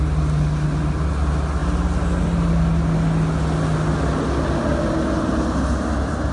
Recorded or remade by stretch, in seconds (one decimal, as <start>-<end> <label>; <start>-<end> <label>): 0.0-6.3 recorded